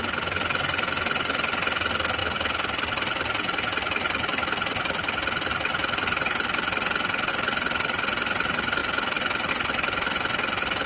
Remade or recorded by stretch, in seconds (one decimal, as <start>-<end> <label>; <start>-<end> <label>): 0.0-10.9 recorded